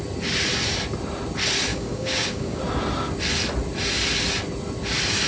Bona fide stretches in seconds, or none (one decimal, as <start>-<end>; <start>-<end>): 0.0-1.7; 2.6-5.3